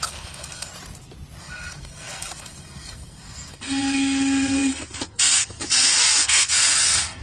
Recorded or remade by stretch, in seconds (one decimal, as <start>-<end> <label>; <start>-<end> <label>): 0.0-0.7 remade; 0.7-1.4 recorded; 1.4-7.2 remade